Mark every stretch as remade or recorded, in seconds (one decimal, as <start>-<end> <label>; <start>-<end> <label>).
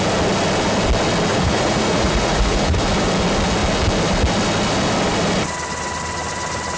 0.0-1.3 recorded; 1.3-2.8 remade; 2.8-6.8 recorded